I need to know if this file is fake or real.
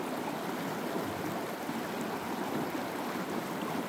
real